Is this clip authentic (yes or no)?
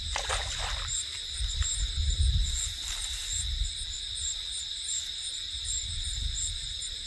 no